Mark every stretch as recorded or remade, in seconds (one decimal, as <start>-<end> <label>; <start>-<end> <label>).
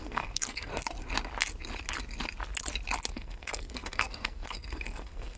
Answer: 0.0-0.7 remade; 0.7-3.1 recorded; 3.1-5.4 remade